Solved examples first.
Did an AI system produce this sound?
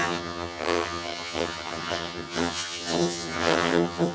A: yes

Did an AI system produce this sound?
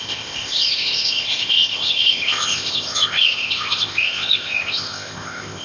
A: yes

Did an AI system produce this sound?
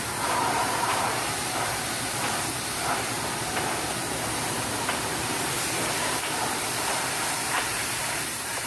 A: yes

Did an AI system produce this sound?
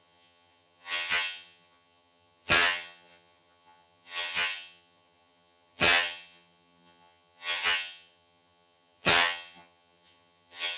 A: yes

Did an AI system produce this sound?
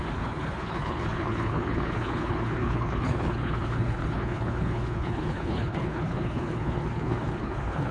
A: yes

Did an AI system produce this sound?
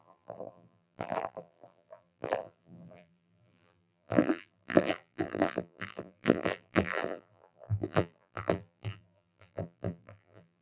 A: yes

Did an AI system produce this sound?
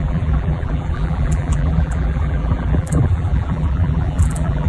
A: yes